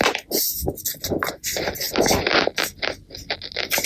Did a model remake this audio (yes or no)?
no